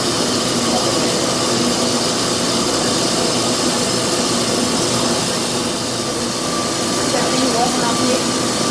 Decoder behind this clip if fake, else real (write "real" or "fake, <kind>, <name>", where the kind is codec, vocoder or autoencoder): real